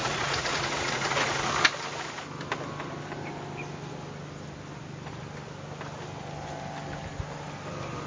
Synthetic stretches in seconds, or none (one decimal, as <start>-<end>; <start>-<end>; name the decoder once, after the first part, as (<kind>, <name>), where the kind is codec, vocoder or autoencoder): 0.0-1.5 (vocoder, Vocos)

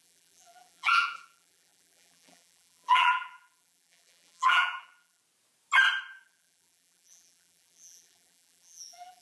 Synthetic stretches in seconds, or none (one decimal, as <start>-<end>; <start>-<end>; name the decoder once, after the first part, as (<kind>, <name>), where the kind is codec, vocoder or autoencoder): 0.0-5.2 (vocoder, BigVGAN v2); 6.1-9.2

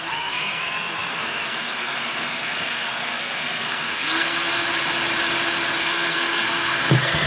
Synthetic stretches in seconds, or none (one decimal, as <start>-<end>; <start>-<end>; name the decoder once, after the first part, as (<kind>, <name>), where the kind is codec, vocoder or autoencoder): 0.0-4.6 (codec, SNAC); 5.8-7.3

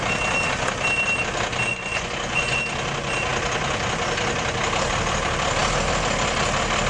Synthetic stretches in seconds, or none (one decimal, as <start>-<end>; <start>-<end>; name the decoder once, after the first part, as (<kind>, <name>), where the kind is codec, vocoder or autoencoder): 1.7-2.6 (vocoder, Vocos)

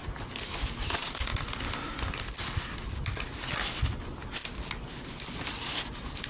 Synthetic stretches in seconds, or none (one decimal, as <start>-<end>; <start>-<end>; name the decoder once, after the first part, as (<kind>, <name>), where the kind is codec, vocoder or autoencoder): none

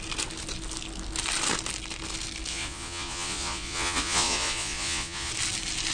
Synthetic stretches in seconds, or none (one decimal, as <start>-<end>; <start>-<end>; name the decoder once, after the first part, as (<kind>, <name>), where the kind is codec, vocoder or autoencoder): 2.5-5.3 (vocoder, Vocos)

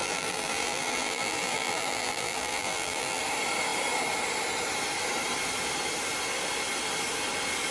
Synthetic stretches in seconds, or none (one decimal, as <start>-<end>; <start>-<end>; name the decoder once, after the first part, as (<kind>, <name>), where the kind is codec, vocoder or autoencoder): 0.0-3.2 (vocoder, BigVGAN v2)